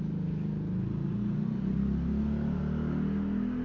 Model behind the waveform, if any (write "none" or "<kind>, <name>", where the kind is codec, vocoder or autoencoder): none